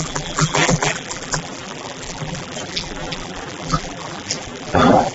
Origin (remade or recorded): remade